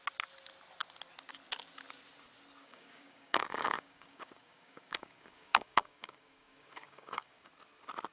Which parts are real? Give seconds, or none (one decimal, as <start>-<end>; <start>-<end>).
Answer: 0.0-2.6; 7.5-8.1